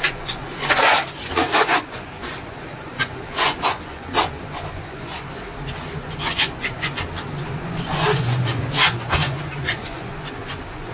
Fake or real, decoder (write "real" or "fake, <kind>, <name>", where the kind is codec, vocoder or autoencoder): fake, vocoder, Vocos